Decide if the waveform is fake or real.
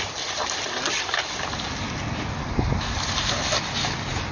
real